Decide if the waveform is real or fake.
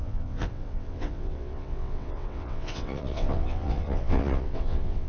fake